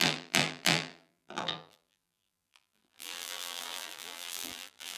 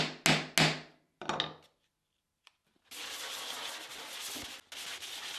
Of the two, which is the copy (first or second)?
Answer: first